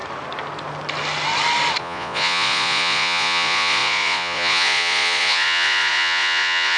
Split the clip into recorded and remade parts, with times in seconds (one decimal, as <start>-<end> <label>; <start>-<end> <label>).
0.0-1.8 recorded; 1.8-6.8 remade